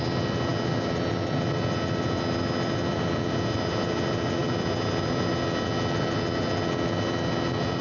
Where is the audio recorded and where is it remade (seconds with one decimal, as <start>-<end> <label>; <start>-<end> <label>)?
0.0-7.8 recorded